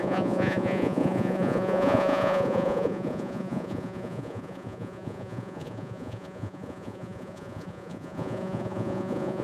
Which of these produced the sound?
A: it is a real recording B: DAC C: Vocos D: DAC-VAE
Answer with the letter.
C